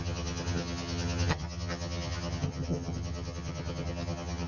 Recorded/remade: remade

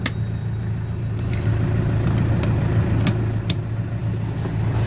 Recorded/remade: recorded